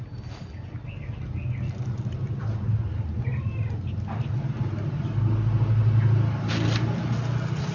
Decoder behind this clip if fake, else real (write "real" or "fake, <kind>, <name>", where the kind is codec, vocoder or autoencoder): real